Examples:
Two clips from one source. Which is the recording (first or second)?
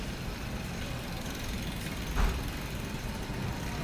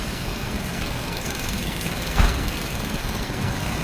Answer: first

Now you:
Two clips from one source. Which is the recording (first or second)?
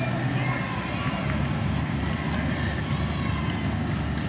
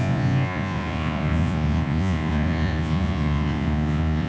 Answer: first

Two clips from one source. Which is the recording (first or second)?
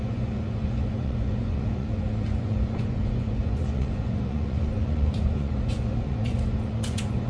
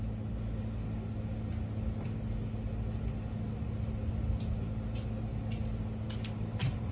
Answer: second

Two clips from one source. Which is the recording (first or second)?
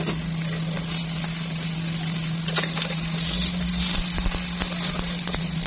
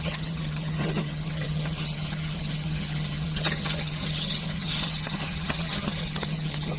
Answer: first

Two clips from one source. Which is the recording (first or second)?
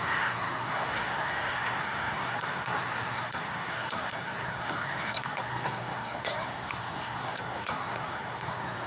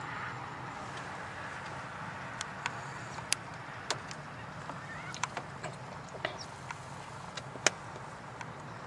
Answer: second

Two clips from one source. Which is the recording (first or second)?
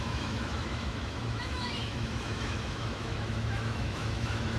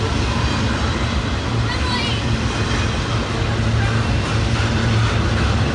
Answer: second